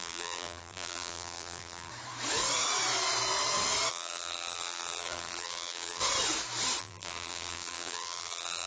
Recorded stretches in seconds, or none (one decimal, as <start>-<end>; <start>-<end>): 1.9-3.9; 6.0-6.8